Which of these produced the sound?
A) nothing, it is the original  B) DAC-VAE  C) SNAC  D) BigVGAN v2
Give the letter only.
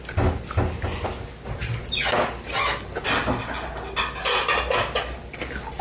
A